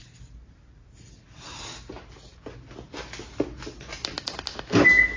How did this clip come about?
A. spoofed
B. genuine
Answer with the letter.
B